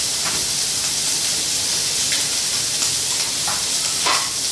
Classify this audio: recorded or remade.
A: recorded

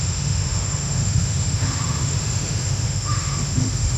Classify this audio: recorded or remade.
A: remade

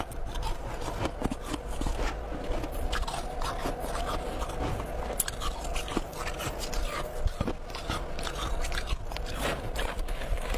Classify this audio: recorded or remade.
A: recorded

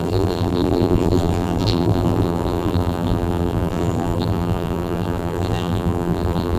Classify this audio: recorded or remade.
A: remade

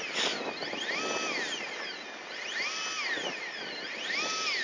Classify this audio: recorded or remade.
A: recorded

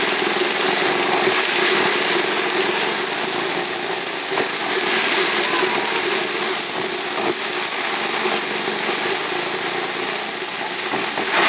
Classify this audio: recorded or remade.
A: recorded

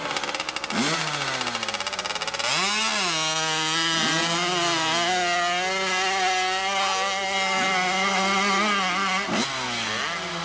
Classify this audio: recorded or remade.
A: recorded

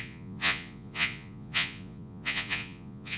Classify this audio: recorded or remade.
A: remade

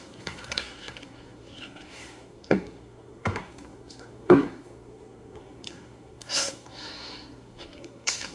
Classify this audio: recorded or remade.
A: remade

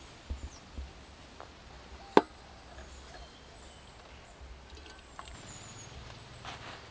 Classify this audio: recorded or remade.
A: recorded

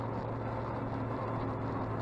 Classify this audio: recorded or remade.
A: recorded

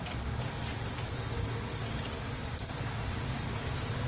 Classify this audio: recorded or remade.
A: recorded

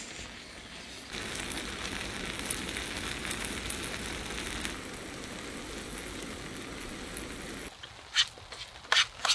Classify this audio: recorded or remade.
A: recorded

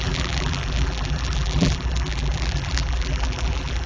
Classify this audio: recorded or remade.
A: remade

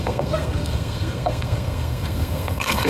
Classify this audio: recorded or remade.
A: remade